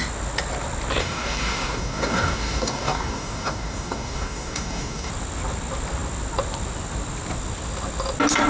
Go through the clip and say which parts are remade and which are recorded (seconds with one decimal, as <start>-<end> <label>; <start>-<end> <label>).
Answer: 0.0-1.0 recorded; 1.0-5.1 remade; 5.1-8.5 recorded